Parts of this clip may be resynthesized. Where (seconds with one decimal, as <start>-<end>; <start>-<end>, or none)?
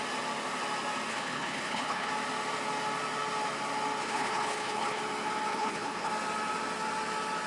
1.1-2.1; 4.0-5.0; 5.5-6.1